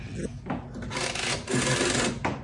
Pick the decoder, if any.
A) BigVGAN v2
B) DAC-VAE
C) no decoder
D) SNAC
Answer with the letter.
C